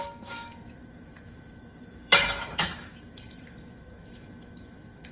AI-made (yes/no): yes